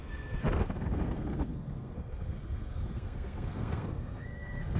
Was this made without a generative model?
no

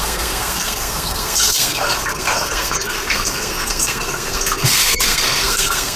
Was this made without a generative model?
no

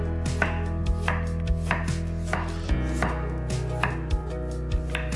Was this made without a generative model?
yes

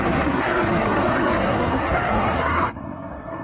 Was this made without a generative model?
no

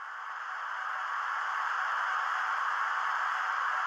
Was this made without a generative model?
yes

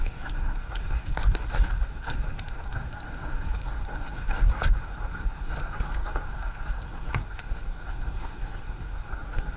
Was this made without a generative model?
no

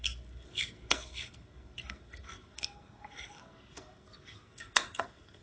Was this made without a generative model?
no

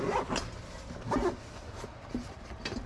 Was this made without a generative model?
yes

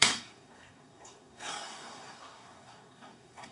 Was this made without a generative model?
no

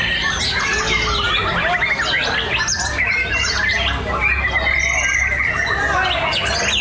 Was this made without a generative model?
yes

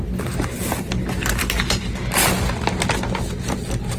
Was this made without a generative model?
yes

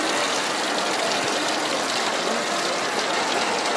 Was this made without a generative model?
yes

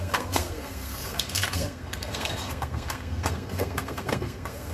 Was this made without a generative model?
no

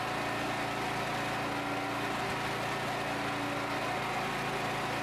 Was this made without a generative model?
yes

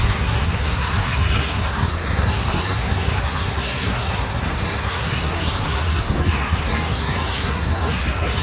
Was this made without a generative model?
no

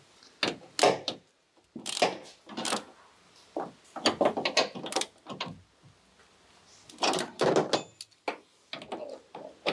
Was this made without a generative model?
yes